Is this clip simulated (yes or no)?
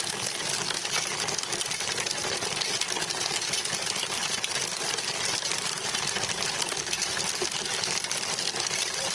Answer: no